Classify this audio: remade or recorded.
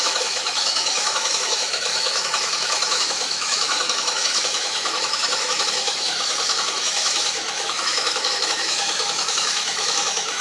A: remade